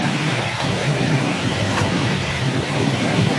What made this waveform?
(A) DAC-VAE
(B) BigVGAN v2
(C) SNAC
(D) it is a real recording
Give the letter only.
C